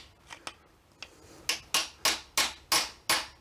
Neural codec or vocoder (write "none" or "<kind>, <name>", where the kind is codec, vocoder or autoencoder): none